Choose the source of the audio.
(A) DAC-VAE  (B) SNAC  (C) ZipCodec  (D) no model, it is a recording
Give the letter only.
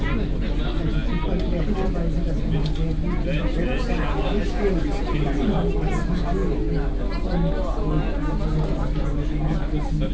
D